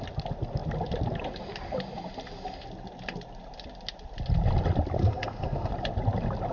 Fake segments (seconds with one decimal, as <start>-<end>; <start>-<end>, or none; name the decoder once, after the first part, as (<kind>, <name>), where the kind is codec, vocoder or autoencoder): 5.0-5.7 (codec, SNAC)